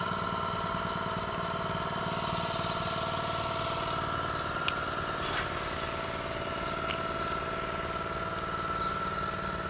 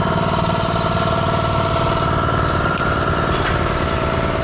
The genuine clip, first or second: first